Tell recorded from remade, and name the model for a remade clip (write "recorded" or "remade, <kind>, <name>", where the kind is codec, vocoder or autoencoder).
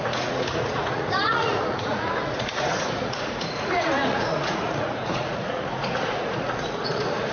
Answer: remade, vocoder, Vocos